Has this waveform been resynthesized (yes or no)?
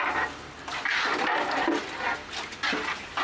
no